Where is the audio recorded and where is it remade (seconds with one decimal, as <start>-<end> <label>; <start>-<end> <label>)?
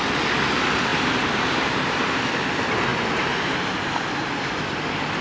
0.0-0.9 recorded; 0.9-2.3 remade; 2.3-2.9 recorded; 2.9-3.6 remade; 3.6-5.2 recorded